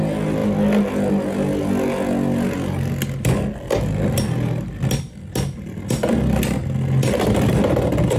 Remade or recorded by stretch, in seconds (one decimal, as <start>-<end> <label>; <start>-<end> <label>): 0.0-8.2 recorded